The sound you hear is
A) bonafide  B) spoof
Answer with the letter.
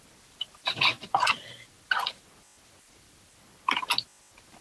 A